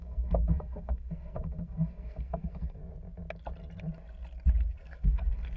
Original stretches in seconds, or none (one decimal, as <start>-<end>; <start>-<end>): 2.8-4.7